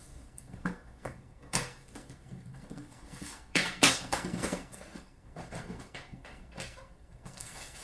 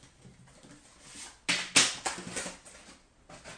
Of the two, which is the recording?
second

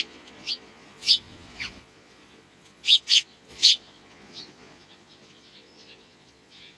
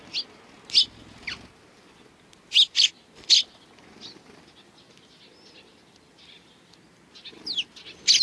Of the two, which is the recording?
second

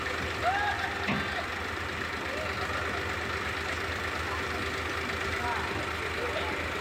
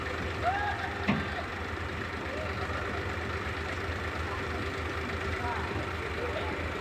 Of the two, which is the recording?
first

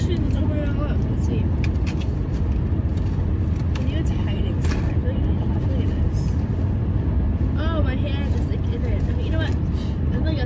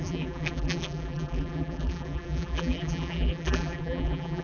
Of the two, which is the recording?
first